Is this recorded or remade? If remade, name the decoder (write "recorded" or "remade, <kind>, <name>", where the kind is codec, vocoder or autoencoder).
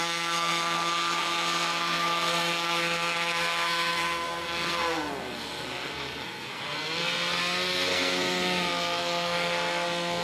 remade, codec, SNAC